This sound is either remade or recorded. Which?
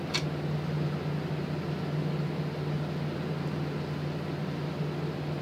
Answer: recorded